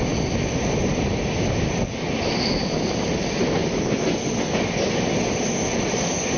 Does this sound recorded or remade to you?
recorded